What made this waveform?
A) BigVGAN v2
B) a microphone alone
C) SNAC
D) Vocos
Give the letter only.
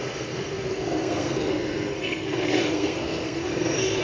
C